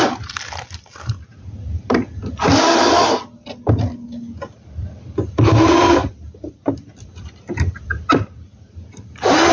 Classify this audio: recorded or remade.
recorded